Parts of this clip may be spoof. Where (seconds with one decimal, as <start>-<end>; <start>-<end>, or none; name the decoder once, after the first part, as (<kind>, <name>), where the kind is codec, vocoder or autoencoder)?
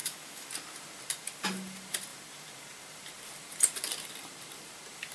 0.0-0.5 (autoencoder, DAC-VAE)